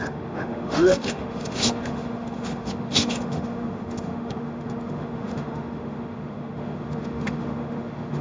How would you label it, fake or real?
fake